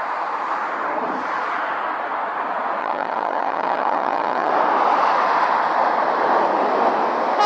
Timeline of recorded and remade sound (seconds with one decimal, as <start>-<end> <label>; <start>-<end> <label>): 0.0-2.8 recorded; 2.8-4.5 remade; 4.5-7.5 recorded